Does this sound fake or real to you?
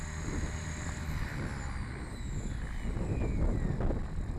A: real